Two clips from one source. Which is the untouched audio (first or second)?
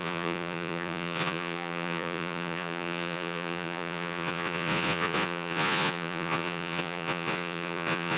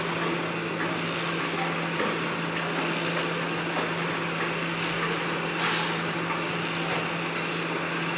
second